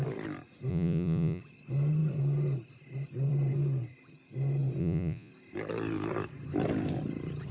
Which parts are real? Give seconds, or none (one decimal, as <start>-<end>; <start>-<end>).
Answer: 0.0-0.7; 1.4-4.8; 5.3-7.5